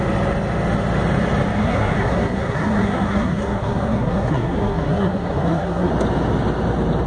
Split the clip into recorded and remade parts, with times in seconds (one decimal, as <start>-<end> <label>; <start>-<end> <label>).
0.0-1.6 recorded; 1.6-5.9 remade; 5.9-7.1 recorded